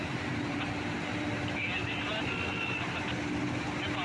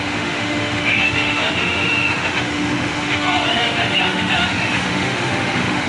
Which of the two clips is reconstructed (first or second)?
second